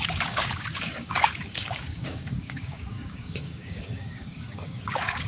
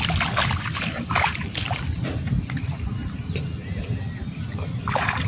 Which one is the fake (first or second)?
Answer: first